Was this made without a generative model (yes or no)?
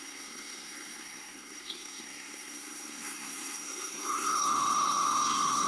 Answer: no